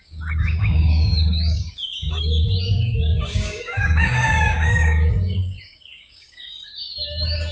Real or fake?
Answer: fake